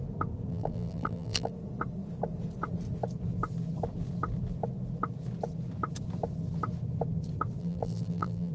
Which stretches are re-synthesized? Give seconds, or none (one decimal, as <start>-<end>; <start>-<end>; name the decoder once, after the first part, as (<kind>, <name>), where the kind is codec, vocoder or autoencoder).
0.5-1.5 (vocoder, BigVGAN v2); 7.6-8.5

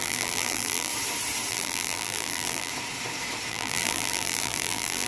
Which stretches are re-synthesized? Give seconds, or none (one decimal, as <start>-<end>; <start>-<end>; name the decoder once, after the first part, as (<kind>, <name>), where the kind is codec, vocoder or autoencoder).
0.0-0.9 (vocoder, BigVGAN v2); 1.5-2.7; 3.5-5.1

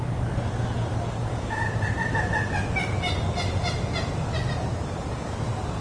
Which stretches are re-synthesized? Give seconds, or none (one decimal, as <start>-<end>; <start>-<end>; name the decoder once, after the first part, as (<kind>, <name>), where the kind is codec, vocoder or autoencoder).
4.4-5.0 (vocoder, BigVGAN v2)

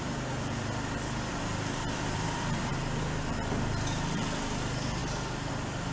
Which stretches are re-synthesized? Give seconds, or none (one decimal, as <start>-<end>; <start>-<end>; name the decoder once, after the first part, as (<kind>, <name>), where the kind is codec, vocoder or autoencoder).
0.0-2.7 (vocoder, BigVGAN v2); 3.7-5.9

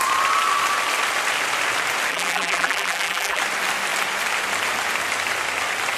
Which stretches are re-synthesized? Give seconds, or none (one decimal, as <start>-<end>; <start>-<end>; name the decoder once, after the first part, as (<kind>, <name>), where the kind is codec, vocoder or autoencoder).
2.1-3.4 (vocoder, BigVGAN v2)